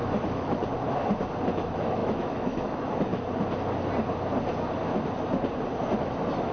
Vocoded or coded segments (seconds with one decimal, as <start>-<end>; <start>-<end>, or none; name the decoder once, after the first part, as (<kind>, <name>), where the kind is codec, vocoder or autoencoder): 0.0-0.6 (autoencoder, DAC-VAE); 1.5-3.1; 6.0-6.5